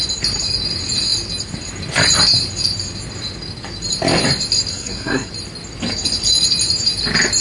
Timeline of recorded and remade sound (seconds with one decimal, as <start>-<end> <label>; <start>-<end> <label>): 0.0-4.7 recorded; 4.7-5.3 remade; 5.3-7.4 recorded